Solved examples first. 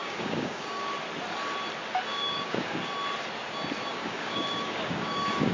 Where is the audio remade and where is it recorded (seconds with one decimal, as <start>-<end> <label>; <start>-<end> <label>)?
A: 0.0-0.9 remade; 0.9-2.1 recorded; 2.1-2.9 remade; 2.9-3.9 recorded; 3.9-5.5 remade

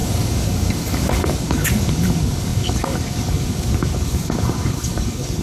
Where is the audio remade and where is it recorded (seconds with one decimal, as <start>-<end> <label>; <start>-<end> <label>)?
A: 0.0-5.4 remade

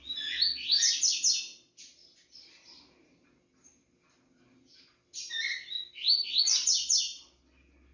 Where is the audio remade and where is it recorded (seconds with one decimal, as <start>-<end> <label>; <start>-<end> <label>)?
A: 0.0-7.9 recorded

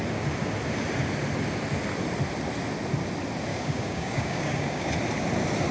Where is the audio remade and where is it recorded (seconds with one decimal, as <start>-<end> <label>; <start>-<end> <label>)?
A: 0.0-3.5 recorded; 3.5-4.9 remade; 4.9-5.7 recorded

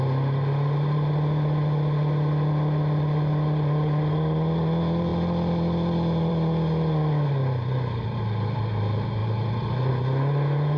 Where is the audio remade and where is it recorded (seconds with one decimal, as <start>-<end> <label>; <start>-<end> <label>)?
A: 0.0-10.8 recorded

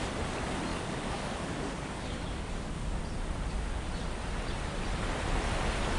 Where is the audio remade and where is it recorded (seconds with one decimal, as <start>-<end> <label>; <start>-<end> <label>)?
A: 0.0-0.7 recorded; 0.7-3.0 remade; 3.0-6.0 recorded